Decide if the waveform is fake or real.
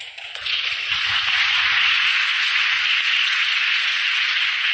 fake